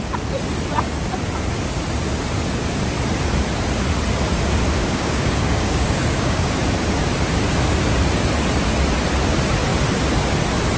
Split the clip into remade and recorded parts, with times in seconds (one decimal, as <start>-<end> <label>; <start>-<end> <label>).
0.0-4.8 recorded; 4.8-6.5 remade; 6.5-10.8 recorded